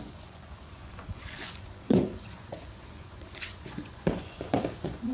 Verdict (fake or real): fake